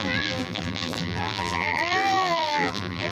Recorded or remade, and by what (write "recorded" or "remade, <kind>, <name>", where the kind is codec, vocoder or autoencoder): remade, vocoder, BigVGAN v2